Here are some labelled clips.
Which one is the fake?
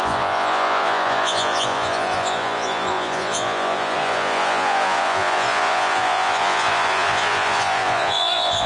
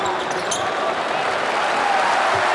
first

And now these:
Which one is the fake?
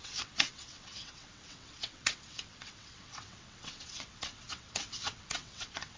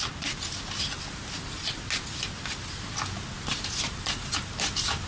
first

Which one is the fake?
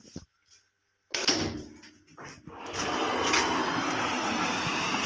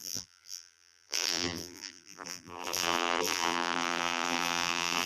second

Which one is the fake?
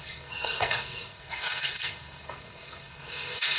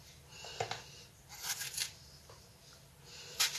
first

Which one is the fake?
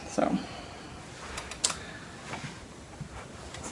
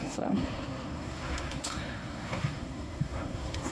second